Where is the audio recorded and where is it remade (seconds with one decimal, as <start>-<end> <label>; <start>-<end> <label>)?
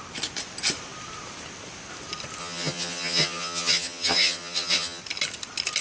0.0-2.4 recorded; 2.4-5.0 remade; 5.0-5.8 recorded